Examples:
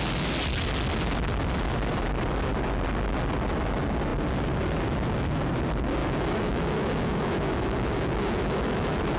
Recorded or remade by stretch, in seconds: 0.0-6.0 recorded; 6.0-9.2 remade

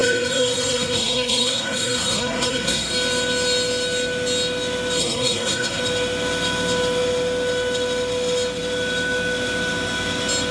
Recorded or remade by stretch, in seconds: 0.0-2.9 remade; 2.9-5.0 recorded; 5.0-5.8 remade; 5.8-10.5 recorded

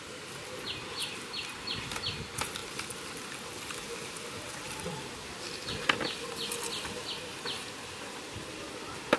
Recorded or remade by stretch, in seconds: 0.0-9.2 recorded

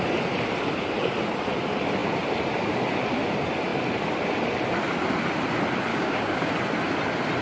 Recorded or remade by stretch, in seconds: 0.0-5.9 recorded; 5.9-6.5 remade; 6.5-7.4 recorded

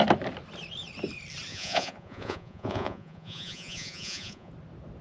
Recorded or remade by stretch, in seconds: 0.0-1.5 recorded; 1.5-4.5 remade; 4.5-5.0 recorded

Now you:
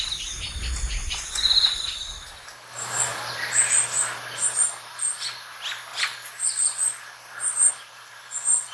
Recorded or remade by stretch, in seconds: 0.0-1.0 recorded; 1.0-1.5 remade; 1.5-8.7 recorded

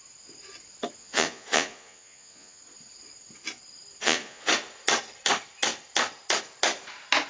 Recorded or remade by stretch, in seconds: 0.0-1.0 recorded; 1.0-2.6 remade; 2.6-4.0 recorded; 4.0-4.5 remade; 4.5-7.3 recorded